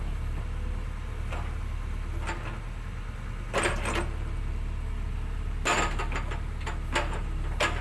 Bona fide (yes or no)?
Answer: yes